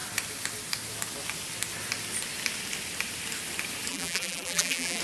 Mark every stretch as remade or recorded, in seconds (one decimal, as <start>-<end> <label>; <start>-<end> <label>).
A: 0.0-3.9 recorded; 3.9-5.0 remade